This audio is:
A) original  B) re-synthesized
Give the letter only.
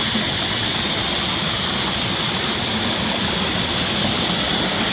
A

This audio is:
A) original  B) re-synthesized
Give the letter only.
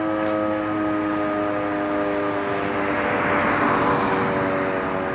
A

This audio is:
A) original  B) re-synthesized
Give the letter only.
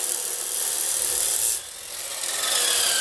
A